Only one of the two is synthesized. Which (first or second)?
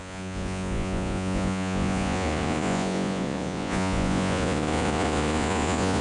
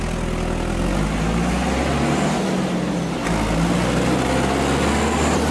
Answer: first